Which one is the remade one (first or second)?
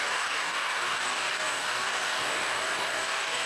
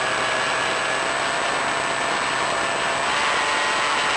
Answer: first